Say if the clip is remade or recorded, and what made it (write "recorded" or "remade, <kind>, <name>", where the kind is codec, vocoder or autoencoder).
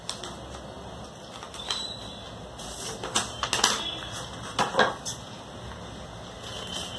recorded